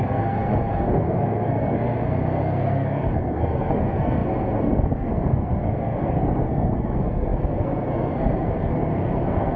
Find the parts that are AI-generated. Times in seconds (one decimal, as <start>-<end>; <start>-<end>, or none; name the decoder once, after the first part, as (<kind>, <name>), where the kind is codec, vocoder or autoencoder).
0.0-9.6 (codec, SNAC)